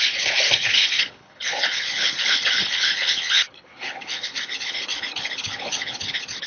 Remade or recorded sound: remade